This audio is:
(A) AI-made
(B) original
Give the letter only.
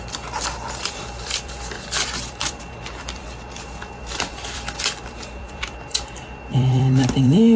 A